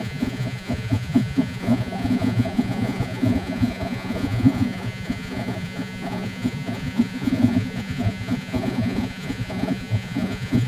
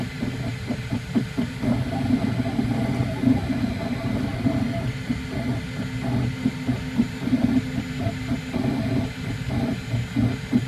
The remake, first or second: first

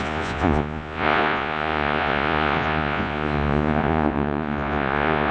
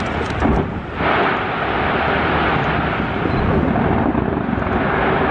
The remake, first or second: first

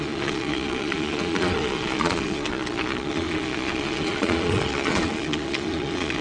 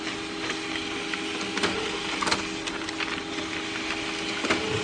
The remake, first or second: first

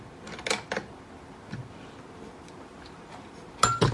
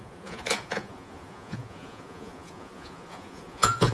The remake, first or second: second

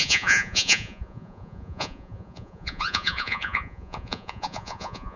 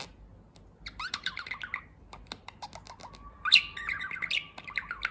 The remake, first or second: first